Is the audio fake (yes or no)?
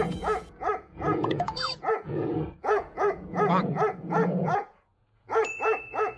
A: yes